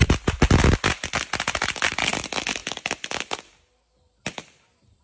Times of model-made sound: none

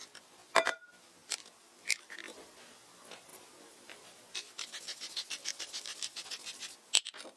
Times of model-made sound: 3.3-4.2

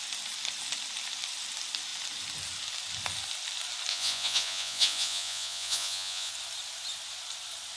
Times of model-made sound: 3.9-6.3

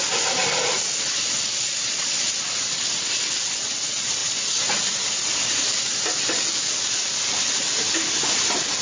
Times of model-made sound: none

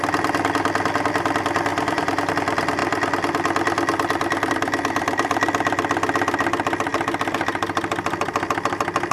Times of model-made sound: 1.7-2.3

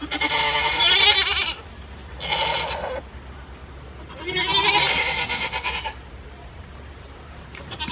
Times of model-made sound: 0.0-2.0; 6.7-7.9

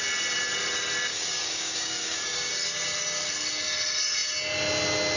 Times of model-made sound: 1.1-2.5